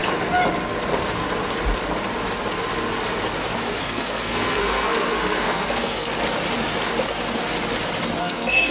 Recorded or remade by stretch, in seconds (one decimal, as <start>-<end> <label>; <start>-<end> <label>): 0.0-3.8 recorded; 3.8-6.1 remade; 6.1-8.2 recorded; 8.2-8.7 remade